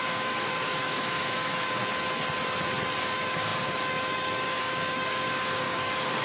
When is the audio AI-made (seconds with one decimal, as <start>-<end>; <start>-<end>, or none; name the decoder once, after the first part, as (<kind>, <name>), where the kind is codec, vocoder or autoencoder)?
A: 0.0-1.8 (codec, DAC); 3.0-6.2